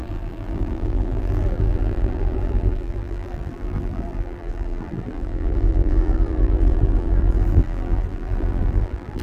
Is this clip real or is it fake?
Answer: fake